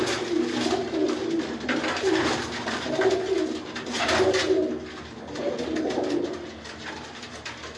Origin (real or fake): real